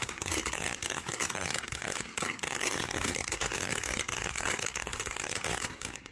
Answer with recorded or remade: remade